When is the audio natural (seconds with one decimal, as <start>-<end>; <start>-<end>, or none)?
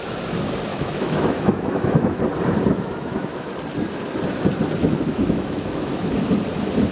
0.0-0.7; 2.2-2.7; 3.5-4.8; 6.1-6.9